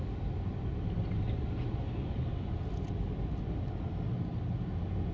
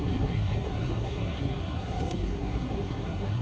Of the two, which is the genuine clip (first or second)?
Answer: first